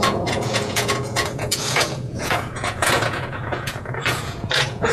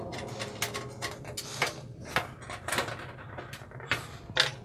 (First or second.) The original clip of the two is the second